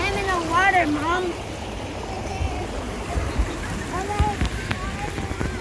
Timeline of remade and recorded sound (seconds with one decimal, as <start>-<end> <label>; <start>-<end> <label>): 0.0-5.6 recorded